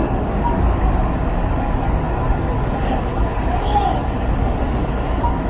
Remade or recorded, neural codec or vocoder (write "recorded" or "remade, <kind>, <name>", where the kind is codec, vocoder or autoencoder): remade, codec, DAC